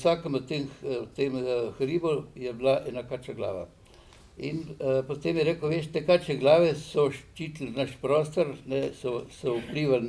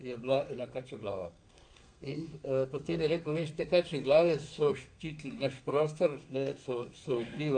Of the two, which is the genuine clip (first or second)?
first